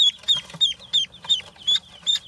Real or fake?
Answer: real